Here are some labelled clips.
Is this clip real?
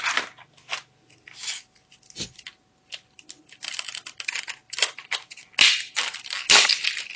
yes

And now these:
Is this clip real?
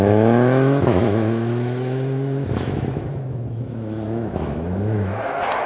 no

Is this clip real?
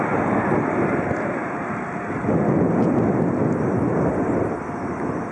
yes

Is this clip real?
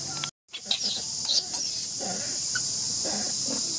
yes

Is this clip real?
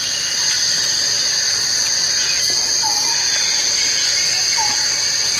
yes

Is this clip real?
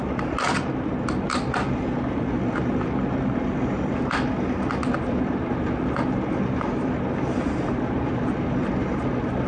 yes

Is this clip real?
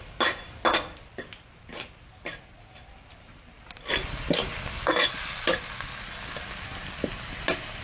yes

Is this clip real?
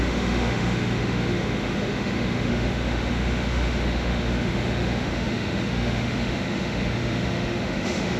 no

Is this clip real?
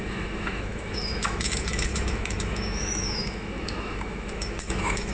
no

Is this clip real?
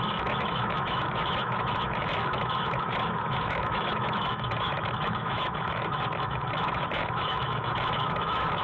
no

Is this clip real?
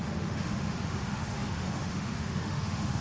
no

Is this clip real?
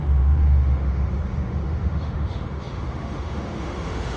no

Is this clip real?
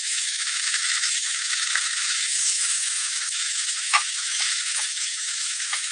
no